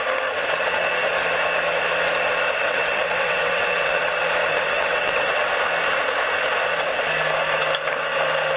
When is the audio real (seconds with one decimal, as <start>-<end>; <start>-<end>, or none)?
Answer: 0.0-2.6; 4.0-4.5; 5.5-8.6